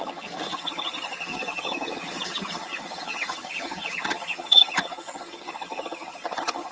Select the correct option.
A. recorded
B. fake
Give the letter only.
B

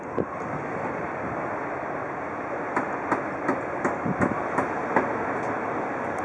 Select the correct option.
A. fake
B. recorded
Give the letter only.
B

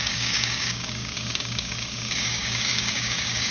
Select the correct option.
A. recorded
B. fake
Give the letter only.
B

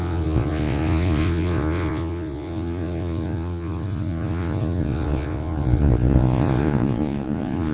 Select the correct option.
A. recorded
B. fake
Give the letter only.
B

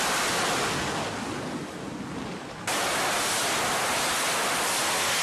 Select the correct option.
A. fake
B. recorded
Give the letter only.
B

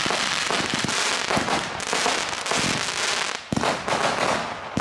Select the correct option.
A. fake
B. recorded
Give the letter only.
B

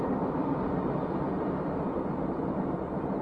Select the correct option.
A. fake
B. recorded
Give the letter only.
B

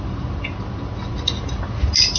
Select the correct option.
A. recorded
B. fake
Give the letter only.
A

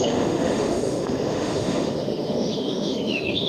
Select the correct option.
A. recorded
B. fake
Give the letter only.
B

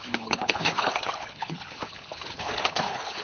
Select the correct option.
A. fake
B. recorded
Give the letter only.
A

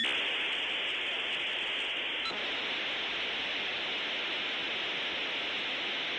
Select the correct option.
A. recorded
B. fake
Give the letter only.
A